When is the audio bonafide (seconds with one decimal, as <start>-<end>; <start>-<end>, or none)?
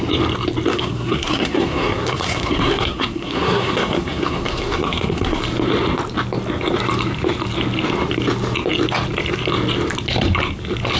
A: 0.0-0.7; 5.4-11.0